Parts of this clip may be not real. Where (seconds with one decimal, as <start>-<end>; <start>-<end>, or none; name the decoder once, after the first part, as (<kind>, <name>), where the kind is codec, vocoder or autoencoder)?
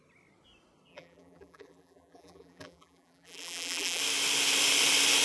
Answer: 0.9-4.0 (vocoder, BigVGAN v2)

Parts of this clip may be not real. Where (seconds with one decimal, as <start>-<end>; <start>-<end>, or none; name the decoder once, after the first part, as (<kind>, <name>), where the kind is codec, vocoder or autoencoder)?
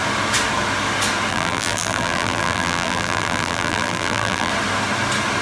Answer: 1.3-4.5 (vocoder, BigVGAN v2)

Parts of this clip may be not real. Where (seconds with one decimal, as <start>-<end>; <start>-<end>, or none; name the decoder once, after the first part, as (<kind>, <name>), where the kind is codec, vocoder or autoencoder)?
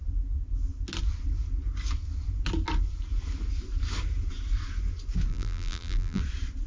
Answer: 5.3-6.2 (vocoder, BigVGAN v2)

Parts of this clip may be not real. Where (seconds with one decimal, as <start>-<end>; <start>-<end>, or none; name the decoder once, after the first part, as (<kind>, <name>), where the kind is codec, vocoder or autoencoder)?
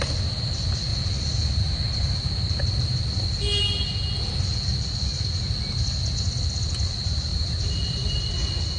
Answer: 0.9-3.1 (vocoder, BigVGAN v2); 7.3-8.3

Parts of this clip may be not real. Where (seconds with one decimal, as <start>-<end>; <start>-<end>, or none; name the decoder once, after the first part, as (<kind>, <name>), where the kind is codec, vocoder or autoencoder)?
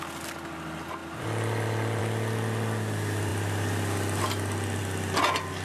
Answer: 1.0-2.0 (vocoder, BigVGAN v2)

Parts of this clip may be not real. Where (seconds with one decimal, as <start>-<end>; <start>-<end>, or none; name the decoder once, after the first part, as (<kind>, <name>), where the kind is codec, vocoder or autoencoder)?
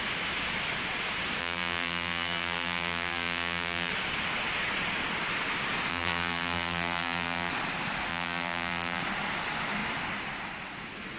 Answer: 1.4-3.9 (vocoder, BigVGAN v2); 5.9-7.5; 8.1-9.0